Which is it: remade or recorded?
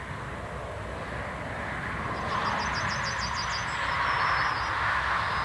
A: recorded